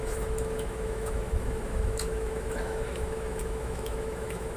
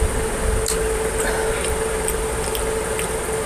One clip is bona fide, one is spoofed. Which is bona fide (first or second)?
second